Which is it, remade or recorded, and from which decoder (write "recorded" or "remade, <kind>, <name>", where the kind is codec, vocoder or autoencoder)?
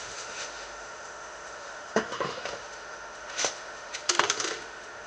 remade, autoencoder, DAC-VAE